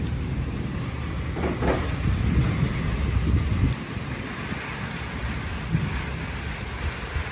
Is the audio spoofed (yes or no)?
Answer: no